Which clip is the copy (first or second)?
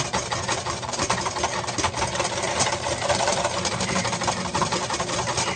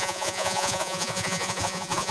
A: second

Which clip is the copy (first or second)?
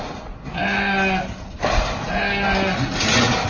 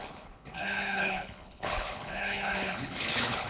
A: second